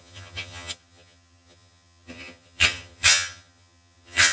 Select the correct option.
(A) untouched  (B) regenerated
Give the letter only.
B